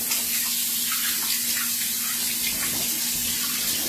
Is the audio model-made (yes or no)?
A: no